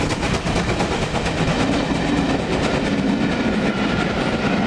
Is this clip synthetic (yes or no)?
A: no